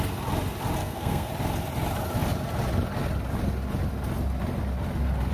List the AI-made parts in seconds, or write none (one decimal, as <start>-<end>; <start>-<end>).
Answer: 0.8-1.3